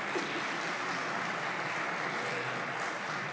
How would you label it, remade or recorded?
recorded